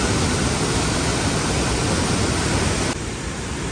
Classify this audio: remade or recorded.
recorded